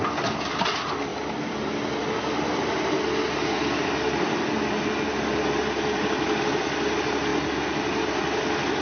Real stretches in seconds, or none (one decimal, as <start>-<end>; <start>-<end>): 0.0-8.8